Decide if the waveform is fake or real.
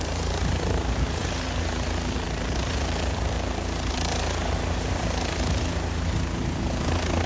fake